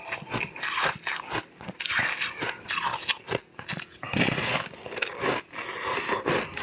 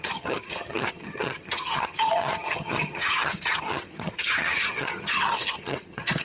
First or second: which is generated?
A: second